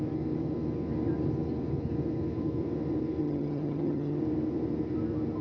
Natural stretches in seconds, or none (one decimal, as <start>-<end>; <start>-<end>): 0.0-3.2; 4.2-5.4